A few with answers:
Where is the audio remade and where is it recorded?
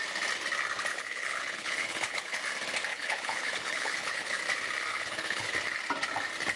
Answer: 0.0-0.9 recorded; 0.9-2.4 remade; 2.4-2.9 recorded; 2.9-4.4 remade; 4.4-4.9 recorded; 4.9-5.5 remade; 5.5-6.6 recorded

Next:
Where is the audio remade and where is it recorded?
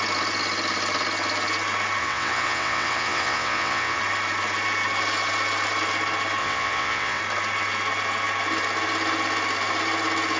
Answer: 0.0-2.0 recorded; 2.0-4.0 remade; 4.0-6.4 recorded; 6.4-7.2 remade; 7.2-10.4 recorded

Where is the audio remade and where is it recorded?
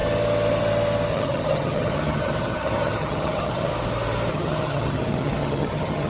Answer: 0.0-1.1 recorded; 1.1-3.7 remade; 3.7-4.3 recorded; 4.3-6.1 remade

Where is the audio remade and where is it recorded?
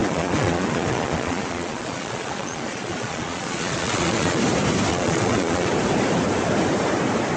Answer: 0.0-4.4 remade; 4.4-4.9 recorded; 4.9-5.7 remade; 5.7-7.4 recorded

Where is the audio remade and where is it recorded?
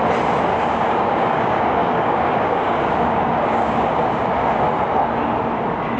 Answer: 0.0-0.5 recorded; 0.5-4.0 remade; 4.0-6.0 recorded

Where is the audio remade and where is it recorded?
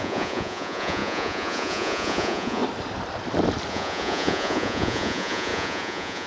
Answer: 0.0-2.6 remade; 2.6-3.7 recorded; 3.7-6.3 remade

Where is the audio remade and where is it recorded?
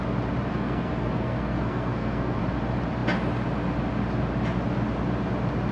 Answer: 0.0-0.5 recorded; 0.5-2.4 remade; 2.4-5.7 recorded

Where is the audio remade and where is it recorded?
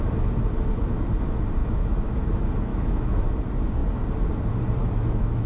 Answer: 0.0-1.6 recorded; 1.6-2.3 remade; 2.3-2.7 recorded; 2.7-3.3 remade; 3.3-4.8 recorded; 4.8-5.5 remade